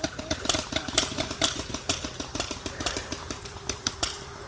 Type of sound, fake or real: fake